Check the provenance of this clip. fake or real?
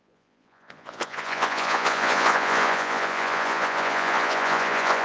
fake